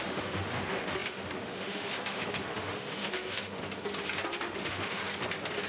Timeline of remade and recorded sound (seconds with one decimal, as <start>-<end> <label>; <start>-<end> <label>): 0.0-3.6 remade; 3.6-4.3 recorded; 4.3-5.0 remade; 5.0-5.7 recorded